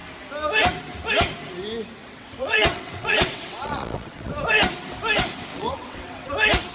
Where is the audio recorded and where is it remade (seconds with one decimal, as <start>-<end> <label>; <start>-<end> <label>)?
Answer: 0.0-2.0 recorded; 2.0-4.3 remade; 4.3-5.5 recorded; 5.5-6.3 remade; 6.3-6.7 recorded